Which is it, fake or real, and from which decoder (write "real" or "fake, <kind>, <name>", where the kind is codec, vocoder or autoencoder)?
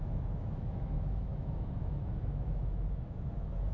fake, autoencoder, DAC-VAE